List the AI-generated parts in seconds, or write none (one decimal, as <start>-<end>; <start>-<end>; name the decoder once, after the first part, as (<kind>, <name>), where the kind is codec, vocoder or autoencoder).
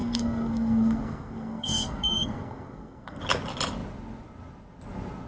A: 0.0-3.2 (codec, SNAC)